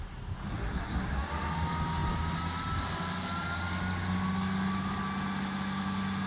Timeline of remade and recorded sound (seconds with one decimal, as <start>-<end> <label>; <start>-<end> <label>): 0.0-6.3 recorded